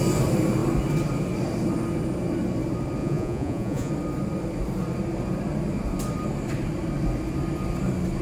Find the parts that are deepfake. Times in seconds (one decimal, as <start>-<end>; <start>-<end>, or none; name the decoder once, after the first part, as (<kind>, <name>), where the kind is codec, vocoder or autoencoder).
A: 3.0-3.9 (vocoder, Vocos)